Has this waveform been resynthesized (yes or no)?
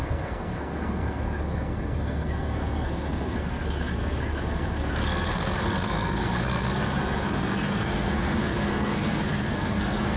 yes